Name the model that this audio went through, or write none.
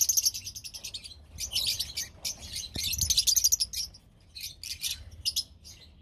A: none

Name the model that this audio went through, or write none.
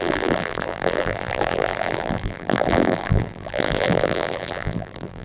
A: vocoder, BigVGAN v2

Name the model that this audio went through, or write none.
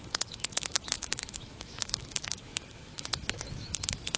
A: autoencoder, DAC-VAE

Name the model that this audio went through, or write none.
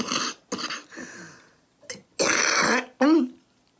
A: none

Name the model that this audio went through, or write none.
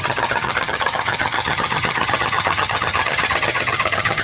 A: vocoder, HiFi-GAN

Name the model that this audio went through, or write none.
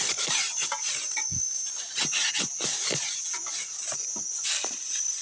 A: none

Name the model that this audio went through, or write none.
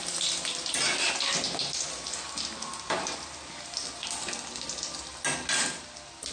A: none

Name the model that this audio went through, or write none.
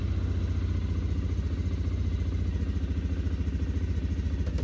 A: none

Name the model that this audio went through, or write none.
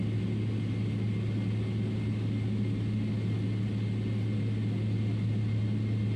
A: none